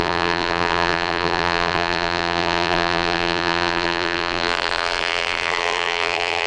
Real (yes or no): no